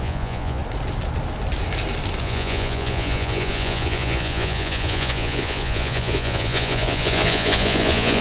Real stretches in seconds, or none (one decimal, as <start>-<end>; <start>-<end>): 0.6-2.2